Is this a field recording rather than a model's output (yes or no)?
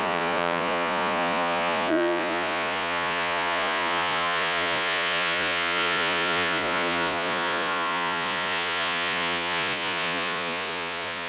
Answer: no